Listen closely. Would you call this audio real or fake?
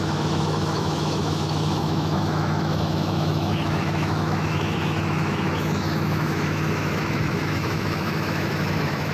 fake